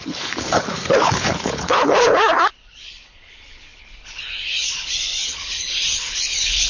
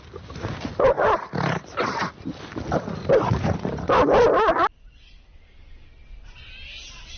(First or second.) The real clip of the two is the second